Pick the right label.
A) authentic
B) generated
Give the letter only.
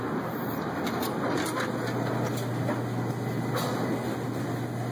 A